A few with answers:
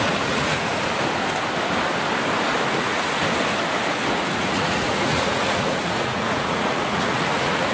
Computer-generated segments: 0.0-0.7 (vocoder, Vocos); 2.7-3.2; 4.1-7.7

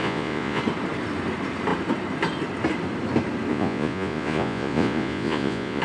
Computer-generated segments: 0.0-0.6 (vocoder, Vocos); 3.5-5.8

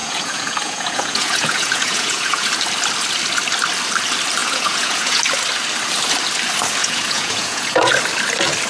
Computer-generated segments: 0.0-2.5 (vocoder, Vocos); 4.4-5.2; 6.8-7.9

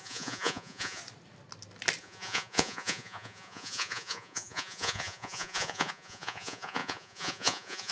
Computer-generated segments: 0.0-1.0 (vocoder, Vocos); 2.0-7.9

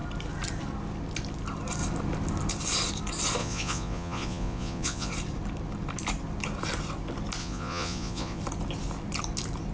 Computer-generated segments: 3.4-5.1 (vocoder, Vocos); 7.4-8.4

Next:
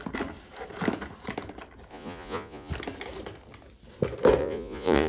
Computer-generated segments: 1.9-2.7 (vocoder, Vocos); 4.4-5.1

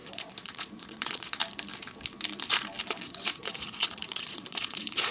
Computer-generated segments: 0.0-1.4 (vocoder, Vocos); 2.8-5.1

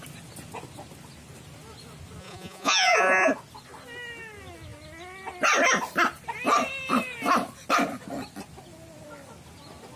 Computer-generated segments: 2.2-3.3 (vocoder, Vocos)